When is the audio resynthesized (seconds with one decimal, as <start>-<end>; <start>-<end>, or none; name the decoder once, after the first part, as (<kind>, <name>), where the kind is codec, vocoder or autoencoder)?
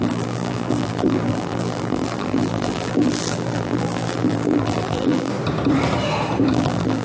0.0-5.3 (vocoder, BigVGAN v2); 6.5-7.0